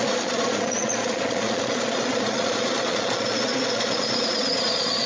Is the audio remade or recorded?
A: remade